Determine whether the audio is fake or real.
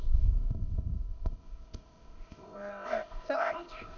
fake